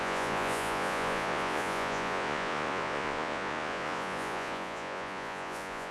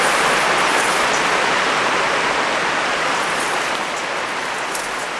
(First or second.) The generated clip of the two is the first